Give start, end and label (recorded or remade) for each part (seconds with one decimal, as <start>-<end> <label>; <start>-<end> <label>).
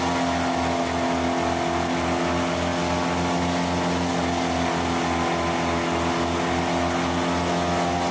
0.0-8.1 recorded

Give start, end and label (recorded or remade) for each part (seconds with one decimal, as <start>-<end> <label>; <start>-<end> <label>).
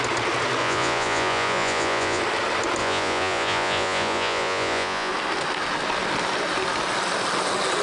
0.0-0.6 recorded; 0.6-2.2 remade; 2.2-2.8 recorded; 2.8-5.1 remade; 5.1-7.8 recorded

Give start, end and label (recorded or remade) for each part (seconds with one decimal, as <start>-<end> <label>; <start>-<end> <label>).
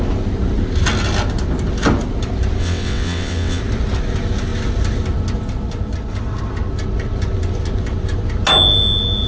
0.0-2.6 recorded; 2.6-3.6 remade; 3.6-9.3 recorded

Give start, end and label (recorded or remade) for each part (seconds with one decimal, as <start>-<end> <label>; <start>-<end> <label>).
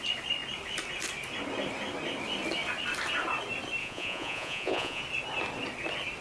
0.0-3.8 recorded; 3.8-5.0 remade; 5.0-6.2 recorded